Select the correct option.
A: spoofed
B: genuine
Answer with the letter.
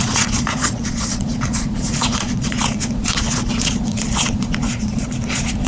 A